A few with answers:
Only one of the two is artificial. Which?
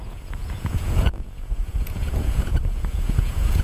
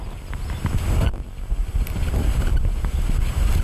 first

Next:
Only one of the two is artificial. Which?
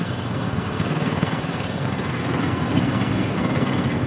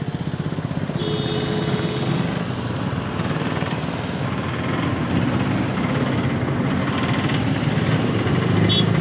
first